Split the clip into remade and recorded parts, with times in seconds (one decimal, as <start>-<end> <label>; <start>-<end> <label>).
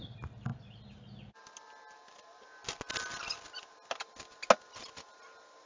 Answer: 0.0-5.7 recorded